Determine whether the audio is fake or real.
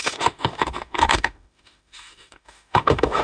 fake